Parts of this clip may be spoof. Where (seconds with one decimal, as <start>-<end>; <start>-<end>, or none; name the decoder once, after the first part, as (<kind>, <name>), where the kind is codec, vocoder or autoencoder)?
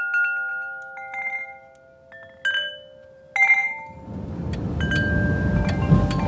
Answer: none